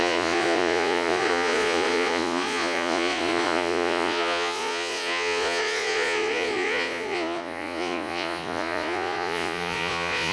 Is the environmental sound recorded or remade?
remade